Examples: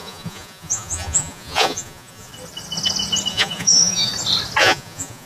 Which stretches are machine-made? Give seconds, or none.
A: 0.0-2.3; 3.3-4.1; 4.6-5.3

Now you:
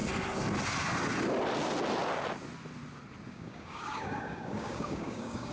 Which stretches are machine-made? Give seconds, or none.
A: 3.3-5.5

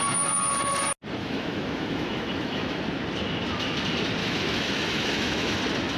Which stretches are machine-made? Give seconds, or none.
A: 1.2-2.8; 4.2-5.6

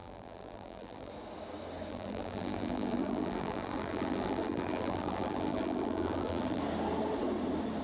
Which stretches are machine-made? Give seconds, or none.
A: 0.0-1.1; 1.9-6.6

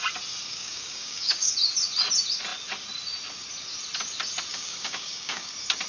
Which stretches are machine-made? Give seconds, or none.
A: 0.5-1.5; 4.5-5.5

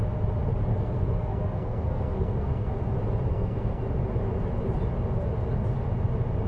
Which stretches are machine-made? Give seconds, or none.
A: 0.7-2.7; 3.3-3.8

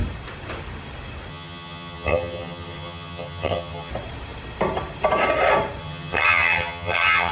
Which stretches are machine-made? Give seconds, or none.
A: 1.3-3.9; 5.8-7.3